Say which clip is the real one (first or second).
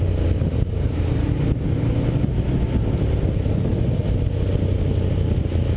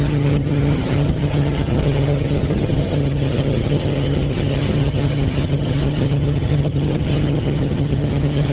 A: first